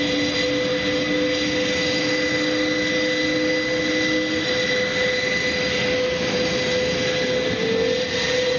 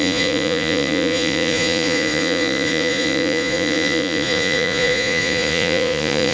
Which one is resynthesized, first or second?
second